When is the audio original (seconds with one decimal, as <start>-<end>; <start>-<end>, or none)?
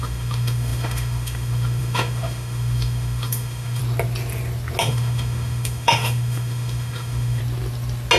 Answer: 3.8-4.8; 7.4-8.2